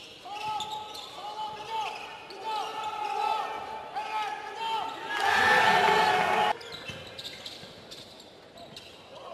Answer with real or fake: real